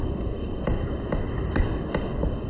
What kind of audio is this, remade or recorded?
recorded